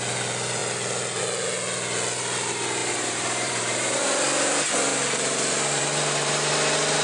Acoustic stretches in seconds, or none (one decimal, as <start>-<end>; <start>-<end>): 0.0-2.8; 4.0-4.9; 6.5-7.0